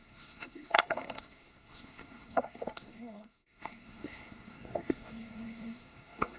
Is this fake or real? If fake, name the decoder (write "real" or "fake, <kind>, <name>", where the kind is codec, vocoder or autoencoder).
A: fake, codec, SNAC